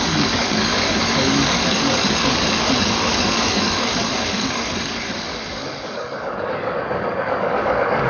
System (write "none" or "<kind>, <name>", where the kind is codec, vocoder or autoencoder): codec, DAC